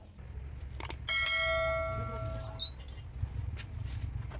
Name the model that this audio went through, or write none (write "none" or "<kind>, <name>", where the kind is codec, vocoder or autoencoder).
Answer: none